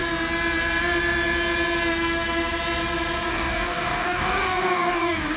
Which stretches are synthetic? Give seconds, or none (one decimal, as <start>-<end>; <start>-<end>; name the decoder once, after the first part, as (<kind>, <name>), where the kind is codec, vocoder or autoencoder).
3.3-5.4 (codec, DAC)